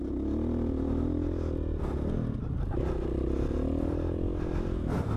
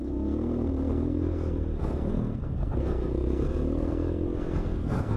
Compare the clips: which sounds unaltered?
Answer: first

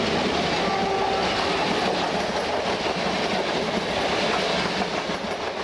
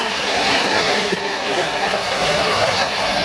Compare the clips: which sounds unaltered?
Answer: first